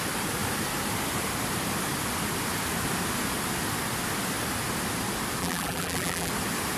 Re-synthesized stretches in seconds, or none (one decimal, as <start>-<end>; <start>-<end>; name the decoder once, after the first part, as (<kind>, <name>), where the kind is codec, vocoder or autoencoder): 5.4-6.3 (vocoder, BigVGAN v2)